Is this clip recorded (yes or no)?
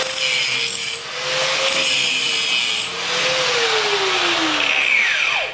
yes